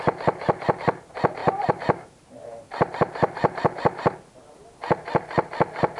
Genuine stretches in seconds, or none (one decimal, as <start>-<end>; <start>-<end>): 0.0-1.4; 4.3-6.0

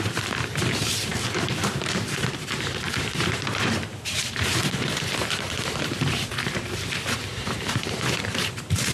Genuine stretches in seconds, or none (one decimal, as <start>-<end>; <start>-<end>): none